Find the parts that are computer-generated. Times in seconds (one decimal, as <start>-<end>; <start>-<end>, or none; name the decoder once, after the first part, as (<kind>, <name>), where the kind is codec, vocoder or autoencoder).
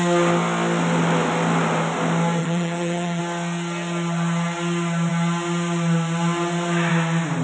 2.4-3.2 (vocoder, HiFi-GAN)